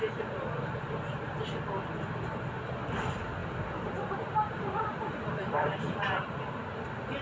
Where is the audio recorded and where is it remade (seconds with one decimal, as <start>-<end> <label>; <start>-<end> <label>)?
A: 0.0-3.4 recorded; 3.4-6.2 remade; 6.2-7.2 recorded